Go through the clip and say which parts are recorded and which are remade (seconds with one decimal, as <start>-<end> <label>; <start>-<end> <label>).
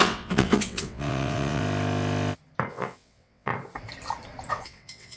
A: 0.0-1.6 remade; 1.6-2.7 recorded; 2.7-3.5 remade; 3.5-4.5 recorded; 4.5-5.2 remade